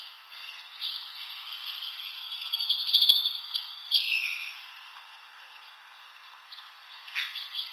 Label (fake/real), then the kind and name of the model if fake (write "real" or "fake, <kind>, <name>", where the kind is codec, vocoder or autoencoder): fake, codec, SNAC